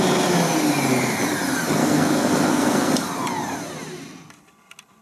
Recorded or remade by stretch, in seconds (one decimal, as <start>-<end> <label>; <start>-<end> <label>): 0.0-1.8 recorded; 1.8-2.9 remade; 2.9-5.0 recorded